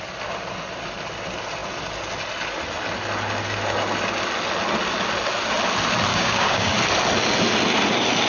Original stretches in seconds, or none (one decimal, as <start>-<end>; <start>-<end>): 0.0-6.1; 6.7-8.3